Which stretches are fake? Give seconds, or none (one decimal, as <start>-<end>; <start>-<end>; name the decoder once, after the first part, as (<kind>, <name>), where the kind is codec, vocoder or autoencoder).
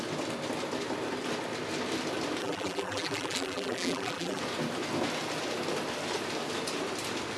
2.4-4.4 (vocoder, BigVGAN v2)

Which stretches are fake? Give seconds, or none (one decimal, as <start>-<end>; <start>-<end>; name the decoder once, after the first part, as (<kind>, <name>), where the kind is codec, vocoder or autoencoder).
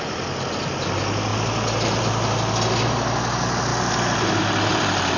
none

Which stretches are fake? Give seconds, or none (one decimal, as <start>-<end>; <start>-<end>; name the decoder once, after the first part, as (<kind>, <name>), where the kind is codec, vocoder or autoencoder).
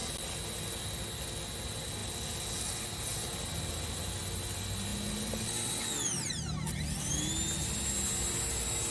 none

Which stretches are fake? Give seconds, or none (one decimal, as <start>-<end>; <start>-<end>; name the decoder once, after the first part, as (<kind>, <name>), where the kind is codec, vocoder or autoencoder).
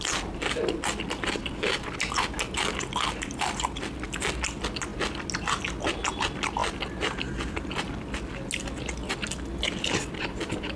none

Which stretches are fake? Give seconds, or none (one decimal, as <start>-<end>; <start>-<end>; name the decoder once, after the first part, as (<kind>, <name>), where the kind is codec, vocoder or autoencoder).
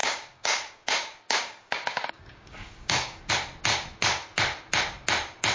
0.0-3.3 (codec, DAC)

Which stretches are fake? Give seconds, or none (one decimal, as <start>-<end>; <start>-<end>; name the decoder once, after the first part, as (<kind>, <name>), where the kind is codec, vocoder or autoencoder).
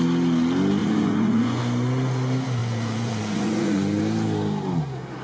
0.8-1.6 (vocoder, Vocos); 2.6-4.0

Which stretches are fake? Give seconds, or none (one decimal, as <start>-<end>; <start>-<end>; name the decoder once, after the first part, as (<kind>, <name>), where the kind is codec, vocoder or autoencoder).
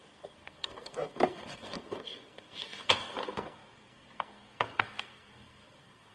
0.0-6.1 (codec, SNAC)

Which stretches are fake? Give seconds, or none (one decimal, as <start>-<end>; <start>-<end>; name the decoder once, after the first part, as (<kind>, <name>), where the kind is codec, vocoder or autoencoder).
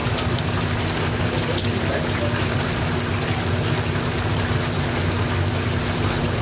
none